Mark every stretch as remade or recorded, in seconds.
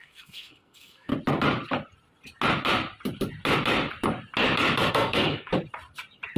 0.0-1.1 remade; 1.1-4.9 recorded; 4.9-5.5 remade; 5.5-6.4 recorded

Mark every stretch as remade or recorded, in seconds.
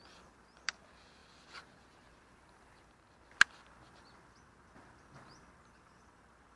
0.0-6.6 recorded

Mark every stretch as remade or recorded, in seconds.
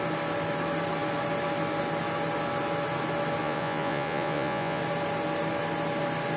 0.0-3.4 recorded; 3.4-4.8 remade; 4.8-6.4 recorded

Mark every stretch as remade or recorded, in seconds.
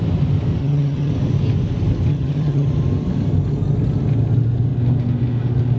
0.0-0.6 recorded; 0.6-1.1 remade; 1.1-2.1 recorded; 2.1-2.7 remade; 2.7-5.8 recorded